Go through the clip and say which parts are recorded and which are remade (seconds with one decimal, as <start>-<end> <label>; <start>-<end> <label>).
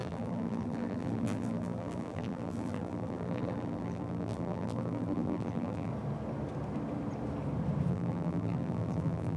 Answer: 0.0-5.9 remade; 5.9-7.9 recorded; 7.9-9.4 remade